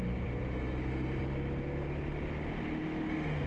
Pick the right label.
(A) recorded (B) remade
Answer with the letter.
A